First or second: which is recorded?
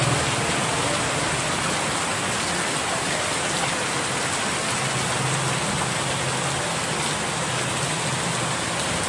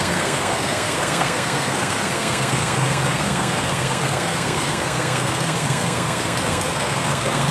first